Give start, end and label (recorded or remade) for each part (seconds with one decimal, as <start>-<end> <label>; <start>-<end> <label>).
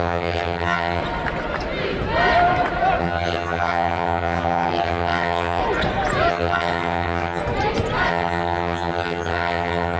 0.0-1.0 remade; 1.0-3.0 recorded; 3.0-5.6 remade; 5.6-6.3 recorded; 6.3-7.4 remade; 7.4-8.1 recorded; 8.1-10.0 remade